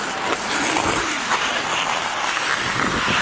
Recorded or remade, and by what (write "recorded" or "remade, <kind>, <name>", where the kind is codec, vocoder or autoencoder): recorded